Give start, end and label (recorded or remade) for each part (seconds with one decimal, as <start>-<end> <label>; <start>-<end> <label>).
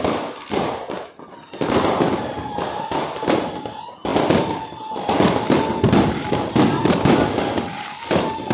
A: 0.0-8.5 recorded